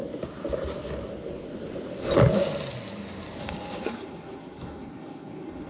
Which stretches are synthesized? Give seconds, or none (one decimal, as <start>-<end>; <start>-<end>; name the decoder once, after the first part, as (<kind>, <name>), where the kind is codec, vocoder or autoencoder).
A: 3.4-5.7 (codec, SNAC)